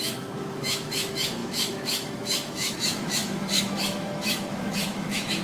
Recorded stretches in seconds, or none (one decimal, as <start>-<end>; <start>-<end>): none